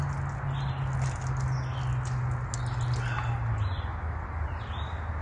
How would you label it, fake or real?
real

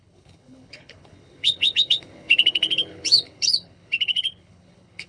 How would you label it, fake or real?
fake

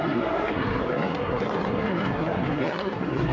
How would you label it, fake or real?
fake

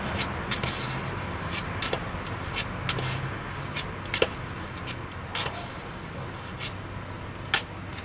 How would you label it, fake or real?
real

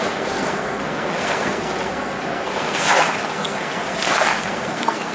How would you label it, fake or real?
fake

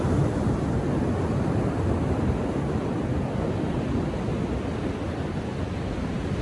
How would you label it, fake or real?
real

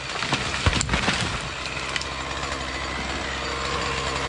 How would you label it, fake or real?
real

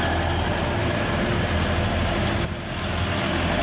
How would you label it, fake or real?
real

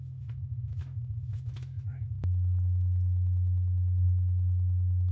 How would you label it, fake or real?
fake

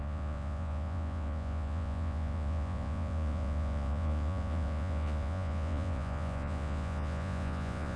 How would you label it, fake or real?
fake